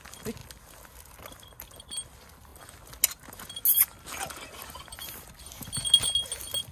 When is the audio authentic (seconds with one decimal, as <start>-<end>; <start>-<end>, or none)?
0.0-6.7